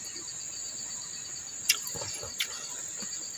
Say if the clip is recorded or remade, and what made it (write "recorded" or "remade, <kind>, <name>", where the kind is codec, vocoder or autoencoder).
recorded